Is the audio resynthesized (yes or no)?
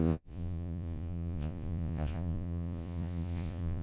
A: yes